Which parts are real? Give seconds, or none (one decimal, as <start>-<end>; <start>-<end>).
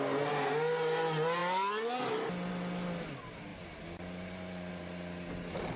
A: 0.0-5.8